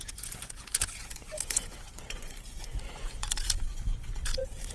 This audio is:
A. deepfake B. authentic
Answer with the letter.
A